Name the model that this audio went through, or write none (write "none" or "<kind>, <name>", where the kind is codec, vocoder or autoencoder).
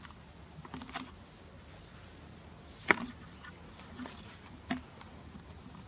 none